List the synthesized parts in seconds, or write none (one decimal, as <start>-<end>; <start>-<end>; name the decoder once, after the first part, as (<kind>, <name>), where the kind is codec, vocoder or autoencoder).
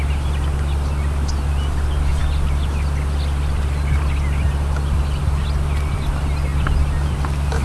none